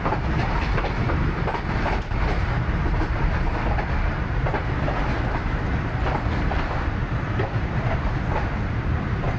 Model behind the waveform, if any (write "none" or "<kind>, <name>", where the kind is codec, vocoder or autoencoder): vocoder, BigVGAN v2